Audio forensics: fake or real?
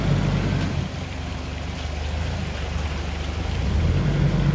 real